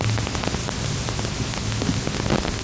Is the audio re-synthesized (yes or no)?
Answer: no